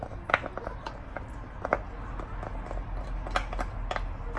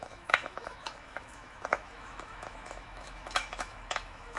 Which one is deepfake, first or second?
second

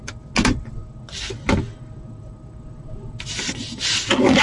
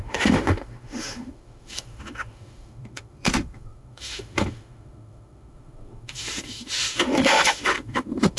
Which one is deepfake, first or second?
second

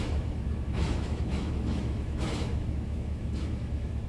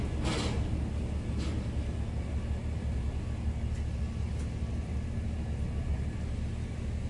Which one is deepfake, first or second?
first